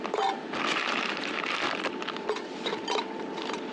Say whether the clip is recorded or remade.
recorded